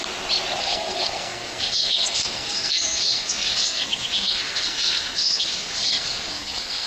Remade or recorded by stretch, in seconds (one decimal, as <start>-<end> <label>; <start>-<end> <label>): 0.0-0.6 recorded; 0.6-6.9 remade